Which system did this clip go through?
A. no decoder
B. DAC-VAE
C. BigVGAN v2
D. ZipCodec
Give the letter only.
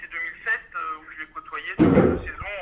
A